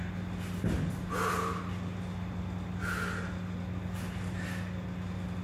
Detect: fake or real real